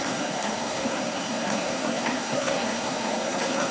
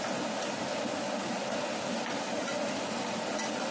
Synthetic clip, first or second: first